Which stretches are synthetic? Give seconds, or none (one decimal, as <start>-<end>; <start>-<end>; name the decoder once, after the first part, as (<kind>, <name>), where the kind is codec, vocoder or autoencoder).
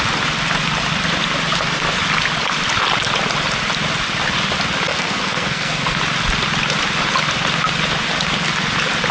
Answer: 4.9-6.0 (codec, SNAC)